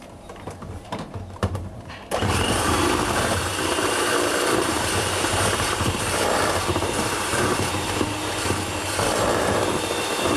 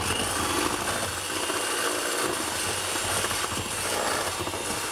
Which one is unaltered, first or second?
second